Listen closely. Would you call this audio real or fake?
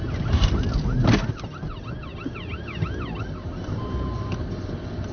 real